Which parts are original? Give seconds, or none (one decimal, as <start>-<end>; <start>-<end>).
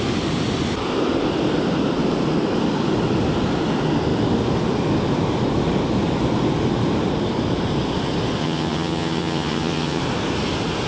0.0-8.4; 10.0-10.9